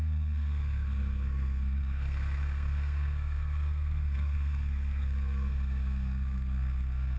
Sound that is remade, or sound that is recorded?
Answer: remade